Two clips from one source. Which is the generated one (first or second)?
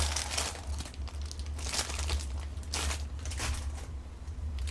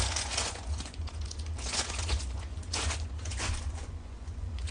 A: second